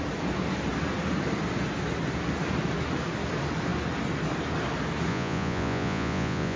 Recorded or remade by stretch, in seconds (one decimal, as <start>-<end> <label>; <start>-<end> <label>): 0.0-5.1 recorded; 5.1-6.6 remade